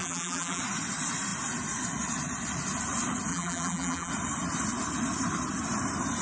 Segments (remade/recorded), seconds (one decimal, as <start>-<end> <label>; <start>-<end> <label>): 0.0-0.6 remade; 0.6-3.3 recorded; 3.3-4.1 remade; 4.1-6.2 recorded